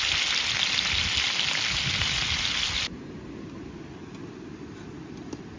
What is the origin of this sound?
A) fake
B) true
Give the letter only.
B